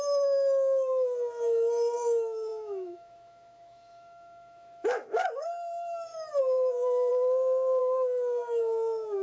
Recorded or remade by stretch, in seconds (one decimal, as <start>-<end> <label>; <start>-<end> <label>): 0.0-7.1 remade; 7.1-7.8 recorded; 7.8-9.2 remade